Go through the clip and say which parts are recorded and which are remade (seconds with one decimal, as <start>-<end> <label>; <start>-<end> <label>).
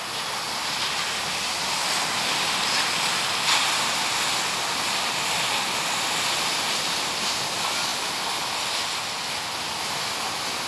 0.0-10.7 recorded